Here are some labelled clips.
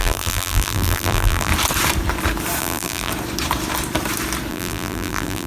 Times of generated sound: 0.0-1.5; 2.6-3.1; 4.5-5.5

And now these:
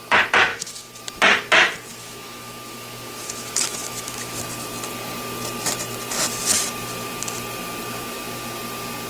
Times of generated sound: 0.5-1.0; 1.9-4.4

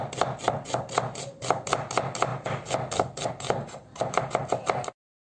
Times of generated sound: none